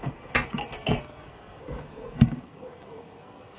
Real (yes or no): no